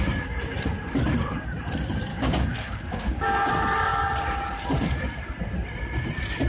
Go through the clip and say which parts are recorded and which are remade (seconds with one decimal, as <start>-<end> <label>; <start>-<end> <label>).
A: 0.0-2.1 recorded; 2.1-3.5 remade; 3.5-6.5 recorded